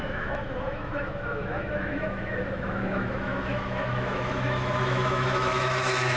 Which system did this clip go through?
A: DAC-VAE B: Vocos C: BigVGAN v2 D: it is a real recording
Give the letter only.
A